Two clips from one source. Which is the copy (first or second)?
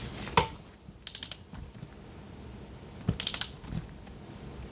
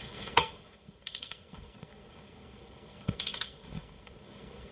second